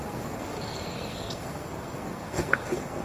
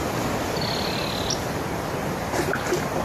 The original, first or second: second